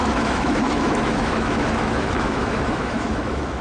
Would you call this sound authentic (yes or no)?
no